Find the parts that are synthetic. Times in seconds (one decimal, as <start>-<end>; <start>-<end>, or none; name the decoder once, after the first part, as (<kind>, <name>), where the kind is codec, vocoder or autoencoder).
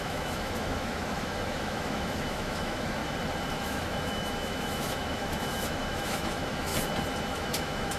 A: 0.0-3.0 (autoencoder, DAC-VAE); 3.5-6.7; 7.3-8.0